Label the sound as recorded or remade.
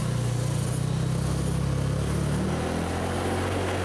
recorded